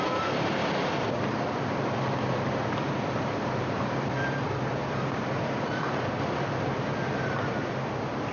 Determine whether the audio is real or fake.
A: fake